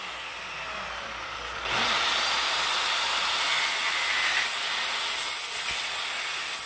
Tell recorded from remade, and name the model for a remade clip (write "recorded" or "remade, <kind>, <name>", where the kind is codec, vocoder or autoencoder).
recorded